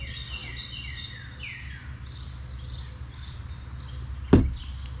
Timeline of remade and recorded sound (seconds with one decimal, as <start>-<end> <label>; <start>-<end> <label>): 0.0-5.0 recorded